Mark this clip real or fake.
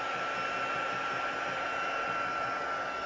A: real